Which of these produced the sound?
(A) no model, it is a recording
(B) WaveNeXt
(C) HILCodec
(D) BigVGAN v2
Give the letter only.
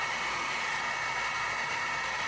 A